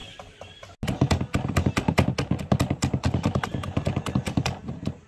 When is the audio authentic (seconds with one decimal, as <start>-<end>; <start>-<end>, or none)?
0.0-5.1